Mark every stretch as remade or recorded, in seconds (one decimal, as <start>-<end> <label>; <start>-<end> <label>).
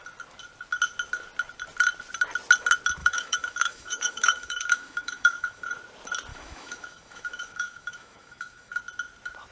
0.0-3.0 recorded; 3.0-5.7 remade; 5.7-6.3 recorded; 6.3-8.8 remade; 8.8-9.5 recorded